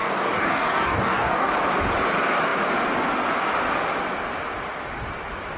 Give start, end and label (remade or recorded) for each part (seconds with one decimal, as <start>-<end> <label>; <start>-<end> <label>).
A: 0.0-1.5 remade; 1.5-5.6 recorded

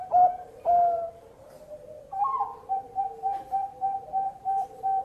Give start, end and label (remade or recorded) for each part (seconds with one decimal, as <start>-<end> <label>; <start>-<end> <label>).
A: 0.0-1.7 remade; 1.7-3.4 recorded; 3.4-5.0 remade

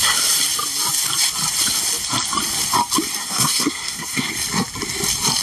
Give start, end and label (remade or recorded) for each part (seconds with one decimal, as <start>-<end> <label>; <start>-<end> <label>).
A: 0.0-3.2 recorded; 3.2-4.2 remade; 4.2-5.4 recorded

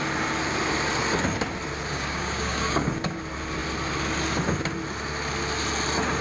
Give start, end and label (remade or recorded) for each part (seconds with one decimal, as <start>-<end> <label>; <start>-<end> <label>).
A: 0.0-1.9 recorded; 1.9-3.2 remade; 3.2-6.2 recorded

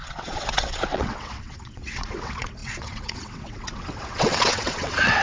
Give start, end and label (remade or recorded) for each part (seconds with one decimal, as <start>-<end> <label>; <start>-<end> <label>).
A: 0.0-5.2 remade

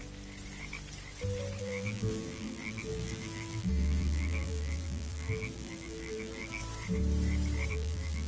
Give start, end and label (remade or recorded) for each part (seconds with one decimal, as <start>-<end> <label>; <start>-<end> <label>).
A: 0.0-1.6 recorded; 1.6-6.6 remade; 6.6-7.7 recorded; 7.7-8.3 remade

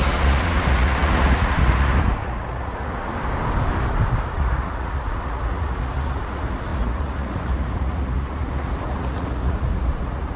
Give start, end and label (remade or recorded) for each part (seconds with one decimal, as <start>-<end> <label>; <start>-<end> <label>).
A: 0.0-3.1 remade; 3.1-4.3 recorded; 4.3-10.4 remade